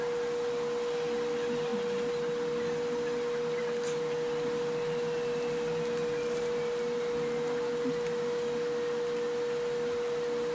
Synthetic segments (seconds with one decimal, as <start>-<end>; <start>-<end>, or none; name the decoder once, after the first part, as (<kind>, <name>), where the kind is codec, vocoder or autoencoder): none